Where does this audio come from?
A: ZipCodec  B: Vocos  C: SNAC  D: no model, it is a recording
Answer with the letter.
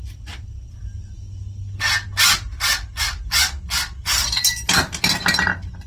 D